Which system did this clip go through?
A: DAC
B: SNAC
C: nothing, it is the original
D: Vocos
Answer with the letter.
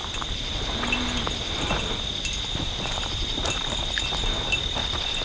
C